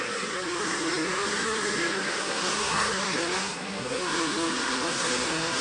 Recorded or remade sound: remade